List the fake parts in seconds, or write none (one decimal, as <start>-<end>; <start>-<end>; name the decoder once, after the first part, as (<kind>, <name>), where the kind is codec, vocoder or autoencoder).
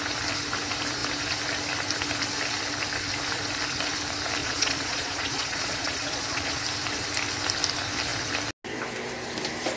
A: 4.4-6.6 (vocoder, Vocos)